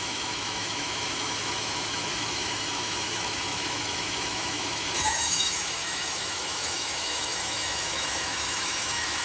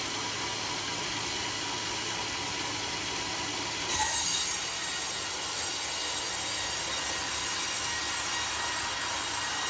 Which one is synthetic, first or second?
first